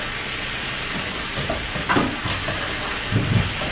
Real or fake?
real